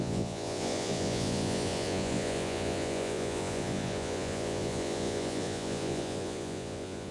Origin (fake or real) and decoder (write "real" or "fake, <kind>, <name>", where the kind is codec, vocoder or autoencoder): fake, vocoder, Vocos